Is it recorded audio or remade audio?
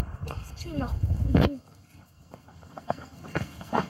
remade